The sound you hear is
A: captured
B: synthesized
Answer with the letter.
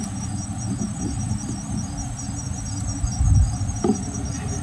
A